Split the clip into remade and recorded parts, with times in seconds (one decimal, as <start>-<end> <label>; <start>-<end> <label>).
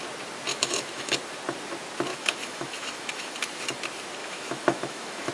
0.0-0.5 recorded; 0.5-1.1 remade; 1.1-2.1 recorded; 2.1-3.4 remade; 3.4-4.2 recorded; 4.2-5.3 remade